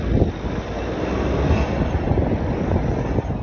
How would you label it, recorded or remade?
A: recorded